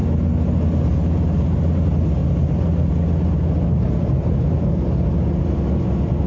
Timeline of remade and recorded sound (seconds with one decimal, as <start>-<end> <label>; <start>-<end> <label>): 0.0-6.3 recorded